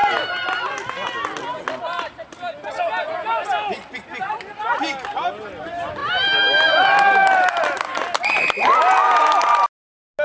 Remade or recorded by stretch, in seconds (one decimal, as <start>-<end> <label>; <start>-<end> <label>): 0.0-10.2 recorded